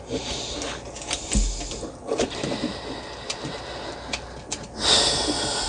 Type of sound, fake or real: real